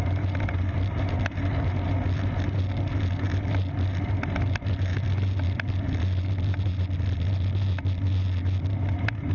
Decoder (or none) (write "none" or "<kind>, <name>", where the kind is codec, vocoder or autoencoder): none